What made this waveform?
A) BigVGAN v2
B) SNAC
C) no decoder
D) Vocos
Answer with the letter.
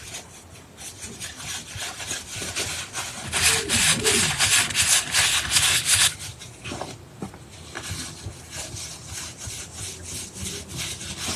C